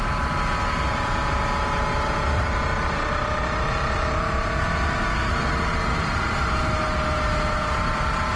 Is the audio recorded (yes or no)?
yes